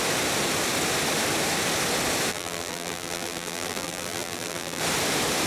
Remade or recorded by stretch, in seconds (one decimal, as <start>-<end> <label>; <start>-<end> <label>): 0.0-2.3 recorded; 2.3-4.8 remade; 4.8-5.5 recorded